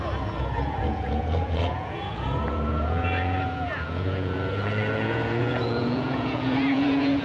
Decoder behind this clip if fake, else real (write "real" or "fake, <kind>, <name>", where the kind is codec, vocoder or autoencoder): fake, vocoder, Vocos